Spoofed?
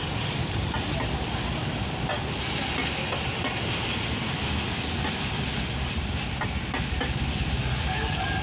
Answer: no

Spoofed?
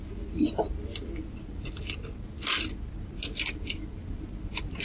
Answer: no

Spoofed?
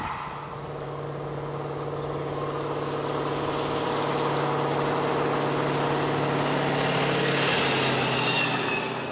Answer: no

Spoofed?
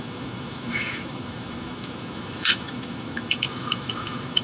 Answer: yes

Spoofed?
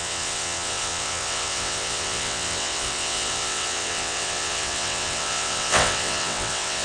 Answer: yes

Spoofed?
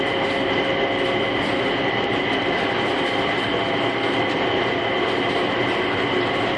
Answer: no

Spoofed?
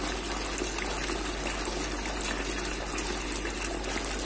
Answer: no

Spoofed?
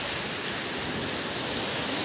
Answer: no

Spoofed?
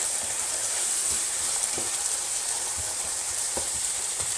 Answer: yes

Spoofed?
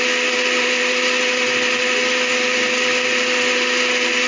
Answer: no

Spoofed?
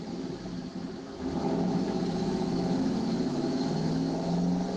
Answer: yes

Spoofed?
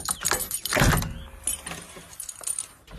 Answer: no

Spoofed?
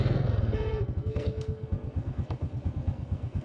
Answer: yes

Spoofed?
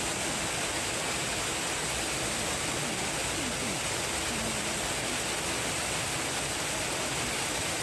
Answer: no